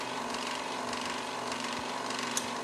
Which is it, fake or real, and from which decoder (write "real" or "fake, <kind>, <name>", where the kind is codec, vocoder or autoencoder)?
fake, vocoder, BigVGAN v2